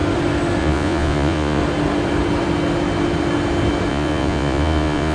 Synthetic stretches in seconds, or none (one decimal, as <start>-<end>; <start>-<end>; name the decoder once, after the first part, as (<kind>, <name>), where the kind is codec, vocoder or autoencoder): 0.6-1.6 (vocoder, Vocos); 3.9-5.1